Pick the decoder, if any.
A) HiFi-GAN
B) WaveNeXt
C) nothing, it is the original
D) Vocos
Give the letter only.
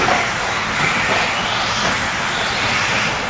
C